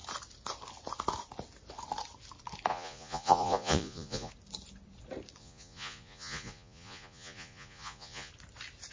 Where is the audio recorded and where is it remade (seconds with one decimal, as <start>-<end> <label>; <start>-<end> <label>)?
0.0-2.7 recorded; 2.7-4.3 remade; 4.3-5.4 recorded; 5.4-8.3 remade; 8.3-8.9 recorded

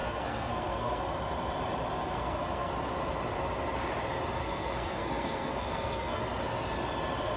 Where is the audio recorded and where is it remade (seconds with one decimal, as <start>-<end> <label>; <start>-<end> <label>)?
0.0-1.0 remade; 1.0-2.0 recorded; 2.0-2.7 remade; 2.7-4.4 recorded; 4.4-6.2 remade; 6.2-7.4 recorded

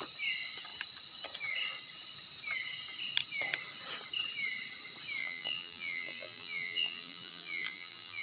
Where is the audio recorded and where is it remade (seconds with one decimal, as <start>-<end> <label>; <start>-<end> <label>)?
0.0-5.2 recorded; 5.2-8.2 remade

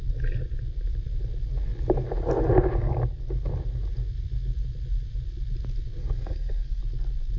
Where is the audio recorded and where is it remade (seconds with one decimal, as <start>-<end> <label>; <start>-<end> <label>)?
0.0-6.0 recorded; 6.0-6.8 remade; 6.8-7.4 recorded

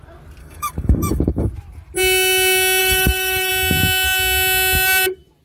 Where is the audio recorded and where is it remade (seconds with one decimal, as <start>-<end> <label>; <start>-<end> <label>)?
0.0-0.4 recorded; 0.4-1.5 remade; 1.5-2.8 recorded; 2.8-3.5 remade; 3.5-5.4 recorded